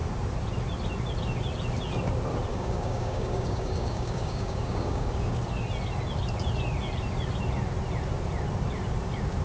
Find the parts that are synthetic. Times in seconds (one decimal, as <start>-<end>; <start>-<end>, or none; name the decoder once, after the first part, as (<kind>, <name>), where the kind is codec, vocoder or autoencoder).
2.5-5.4 (codec, DAC)